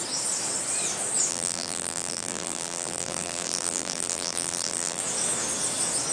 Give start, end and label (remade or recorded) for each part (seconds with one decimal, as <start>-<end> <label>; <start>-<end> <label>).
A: 0.0-1.3 recorded; 1.3-5.0 remade; 5.0-6.1 recorded

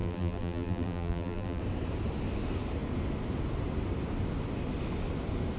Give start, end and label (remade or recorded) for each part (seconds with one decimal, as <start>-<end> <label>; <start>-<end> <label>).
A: 0.0-1.6 remade; 1.6-5.6 recorded

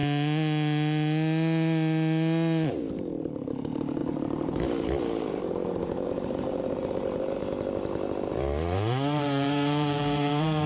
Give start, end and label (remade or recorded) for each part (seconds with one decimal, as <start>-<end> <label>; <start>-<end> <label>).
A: 0.0-2.8 recorded; 2.8-7.4 remade; 7.4-8.3 recorded; 8.3-10.7 remade